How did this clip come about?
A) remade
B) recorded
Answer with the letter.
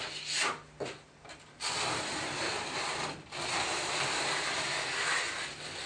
B